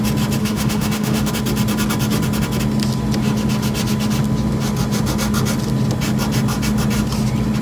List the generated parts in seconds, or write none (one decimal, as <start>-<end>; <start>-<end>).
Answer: 0.4-1.3